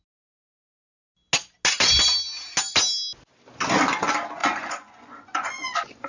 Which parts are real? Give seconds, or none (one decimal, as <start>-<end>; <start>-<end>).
0.0-4.4